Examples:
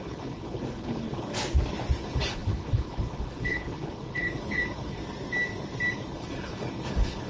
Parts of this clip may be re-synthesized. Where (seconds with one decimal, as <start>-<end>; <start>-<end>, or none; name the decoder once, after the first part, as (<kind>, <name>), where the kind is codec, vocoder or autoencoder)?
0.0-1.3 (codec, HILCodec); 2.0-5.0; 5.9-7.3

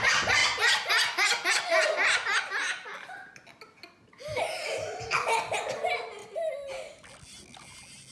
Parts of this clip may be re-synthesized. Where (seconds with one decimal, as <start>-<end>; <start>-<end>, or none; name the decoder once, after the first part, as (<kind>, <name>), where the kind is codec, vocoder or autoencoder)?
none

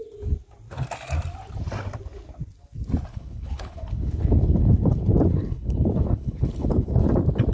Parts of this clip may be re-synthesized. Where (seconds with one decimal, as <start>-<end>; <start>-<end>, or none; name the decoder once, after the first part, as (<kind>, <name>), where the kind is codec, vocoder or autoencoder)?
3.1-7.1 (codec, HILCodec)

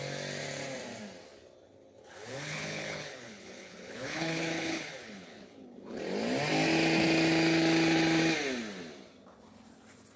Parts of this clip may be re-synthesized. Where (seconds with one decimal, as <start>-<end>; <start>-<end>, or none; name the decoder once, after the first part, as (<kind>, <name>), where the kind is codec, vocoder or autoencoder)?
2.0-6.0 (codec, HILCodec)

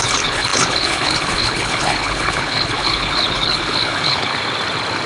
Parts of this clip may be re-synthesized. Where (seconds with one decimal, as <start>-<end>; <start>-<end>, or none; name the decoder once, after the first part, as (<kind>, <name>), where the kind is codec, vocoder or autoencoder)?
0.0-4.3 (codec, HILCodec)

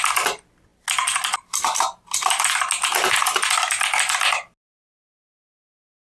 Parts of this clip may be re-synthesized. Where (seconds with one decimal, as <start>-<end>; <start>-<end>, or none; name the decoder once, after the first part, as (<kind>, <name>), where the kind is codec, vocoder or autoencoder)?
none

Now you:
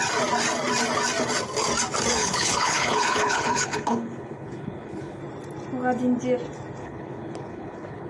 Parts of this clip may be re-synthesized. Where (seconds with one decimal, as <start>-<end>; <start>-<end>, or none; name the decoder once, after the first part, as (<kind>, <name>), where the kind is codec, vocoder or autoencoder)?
2.2-5.2 (codec, HILCodec); 6.8-8.1